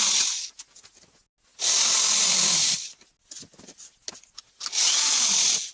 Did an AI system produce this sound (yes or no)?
no